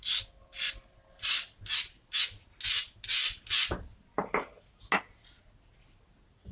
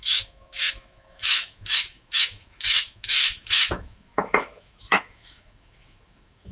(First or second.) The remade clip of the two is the second